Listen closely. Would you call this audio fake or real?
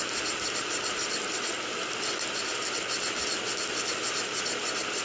real